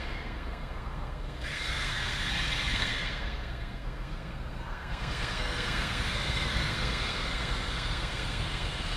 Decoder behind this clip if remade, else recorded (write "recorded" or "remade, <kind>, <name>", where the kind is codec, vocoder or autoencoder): remade, codec, SNAC